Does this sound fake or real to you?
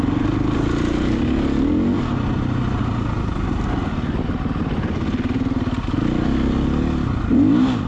real